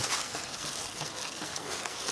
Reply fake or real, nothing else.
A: fake